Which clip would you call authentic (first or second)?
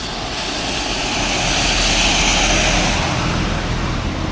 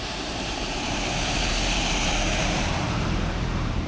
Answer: first